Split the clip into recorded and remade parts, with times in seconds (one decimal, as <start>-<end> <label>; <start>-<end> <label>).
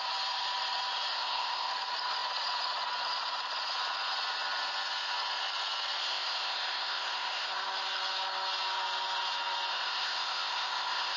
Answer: 0.0-1.1 recorded; 1.1-1.7 remade; 1.7-6.0 recorded; 6.0-7.5 remade; 7.5-9.7 recorded; 9.7-11.2 remade